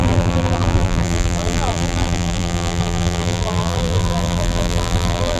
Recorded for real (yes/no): no